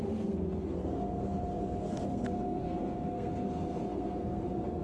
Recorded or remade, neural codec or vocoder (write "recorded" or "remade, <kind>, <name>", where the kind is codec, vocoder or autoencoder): remade, codec, SNAC